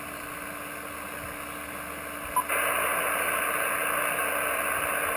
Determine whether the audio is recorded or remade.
recorded